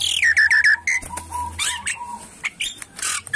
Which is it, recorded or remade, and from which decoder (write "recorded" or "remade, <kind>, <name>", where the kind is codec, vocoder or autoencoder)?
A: recorded